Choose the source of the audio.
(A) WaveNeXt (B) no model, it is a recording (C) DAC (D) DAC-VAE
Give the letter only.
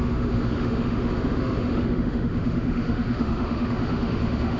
D